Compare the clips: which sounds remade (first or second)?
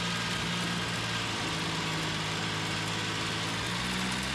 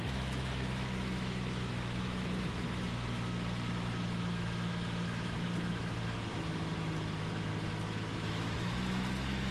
second